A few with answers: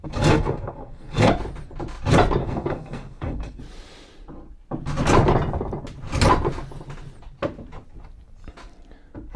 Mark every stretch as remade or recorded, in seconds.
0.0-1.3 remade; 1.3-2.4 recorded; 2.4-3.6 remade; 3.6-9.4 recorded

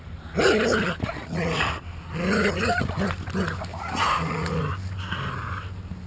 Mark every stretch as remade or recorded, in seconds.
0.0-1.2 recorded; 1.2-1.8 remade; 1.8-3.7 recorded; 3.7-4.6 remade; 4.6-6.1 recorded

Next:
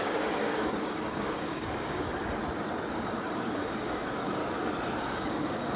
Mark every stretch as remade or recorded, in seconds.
0.0-2.4 remade; 2.4-2.9 recorded; 2.9-4.4 remade; 4.4-5.0 recorded; 5.0-5.8 remade

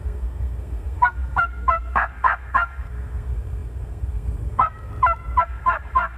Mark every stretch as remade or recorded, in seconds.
0.0-4.9 remade; 4.9-5.4 recorded; 5.4-6.2 remade